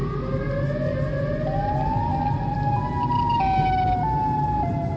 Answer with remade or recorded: recorded